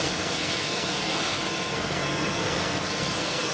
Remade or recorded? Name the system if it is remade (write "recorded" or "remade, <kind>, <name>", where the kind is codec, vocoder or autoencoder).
remade, codec, SNAC